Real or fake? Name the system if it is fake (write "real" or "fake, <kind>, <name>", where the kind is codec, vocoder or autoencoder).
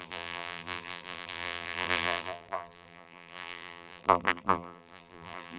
fake, vocoder, BigVGAN v2